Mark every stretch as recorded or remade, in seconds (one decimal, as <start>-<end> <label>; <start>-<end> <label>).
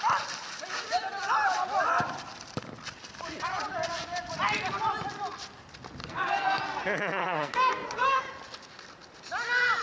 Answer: 0.0-6.0 recorded; 6.0-6.6 remade; 6.6-7.2 recorded; 7.2-8.2 remade; 8.2-9.8 recorded